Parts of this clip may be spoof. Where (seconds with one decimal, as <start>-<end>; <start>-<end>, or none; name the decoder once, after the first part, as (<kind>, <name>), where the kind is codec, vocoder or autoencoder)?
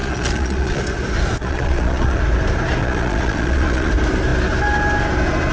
0.0-0.8 (vocoder, Vocos); 1.4-2.2; 2.8-3.9